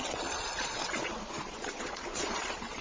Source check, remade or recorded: remade